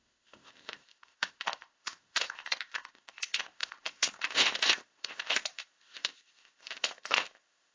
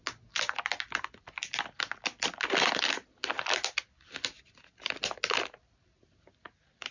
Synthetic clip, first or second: first